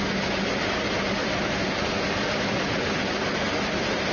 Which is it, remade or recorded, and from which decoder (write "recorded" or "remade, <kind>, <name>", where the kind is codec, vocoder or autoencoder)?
recorded